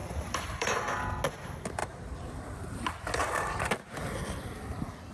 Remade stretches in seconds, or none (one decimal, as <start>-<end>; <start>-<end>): 0.0-0.7; 1.8-2.6; 3.2-3.7